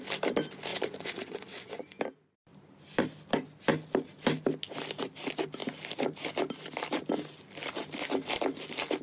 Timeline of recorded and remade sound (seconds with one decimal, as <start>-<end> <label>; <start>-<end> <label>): 0.0-0.7 recorded; 0.7-2.0 remade; 2.0-9.0 recorded